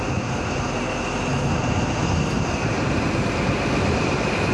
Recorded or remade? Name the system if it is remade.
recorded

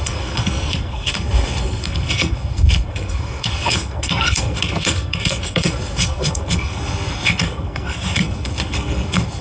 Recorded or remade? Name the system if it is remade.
remade, codec, SNAC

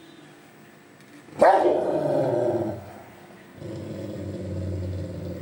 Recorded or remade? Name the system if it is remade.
recorded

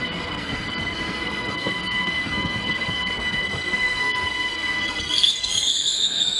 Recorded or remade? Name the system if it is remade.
remade, codec, SNAC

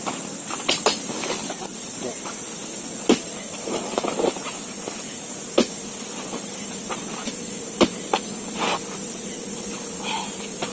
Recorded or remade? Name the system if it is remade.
recorded